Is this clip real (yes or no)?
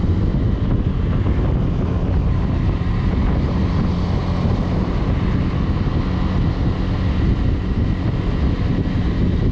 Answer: yes